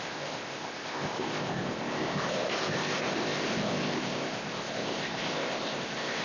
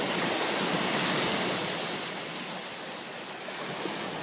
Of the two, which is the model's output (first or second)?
first